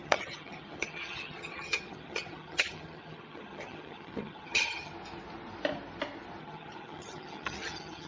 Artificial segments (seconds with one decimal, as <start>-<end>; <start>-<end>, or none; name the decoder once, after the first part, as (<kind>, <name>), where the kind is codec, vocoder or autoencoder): 0.0-4.9 (vocoder, HiFi-GAN); 6.4-8.1